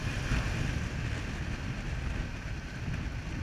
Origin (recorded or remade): recorded